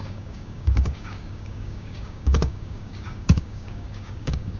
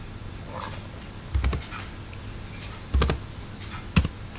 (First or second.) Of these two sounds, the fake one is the first